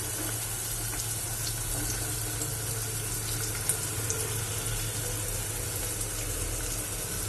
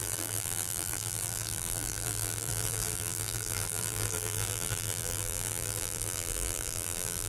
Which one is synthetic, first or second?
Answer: second